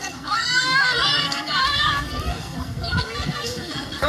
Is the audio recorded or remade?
remade